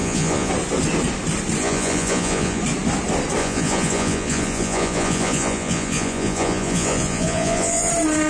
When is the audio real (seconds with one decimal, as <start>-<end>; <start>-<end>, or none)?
0.5-1.6; 2.6-3.4; 7.9-8.3